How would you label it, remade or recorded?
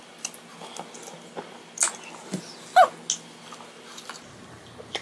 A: recorded